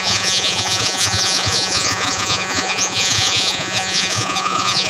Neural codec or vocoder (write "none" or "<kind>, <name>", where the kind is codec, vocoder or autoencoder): vocoder, Vocos